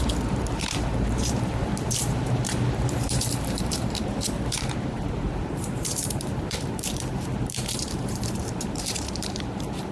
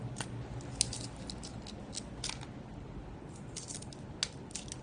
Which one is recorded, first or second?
second